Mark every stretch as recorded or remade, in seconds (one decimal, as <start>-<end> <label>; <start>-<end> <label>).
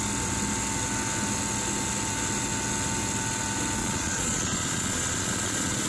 0.0-3.8 recorded; 3.8-5.9 remade